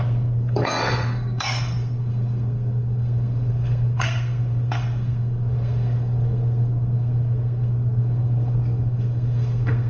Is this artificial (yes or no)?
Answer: yes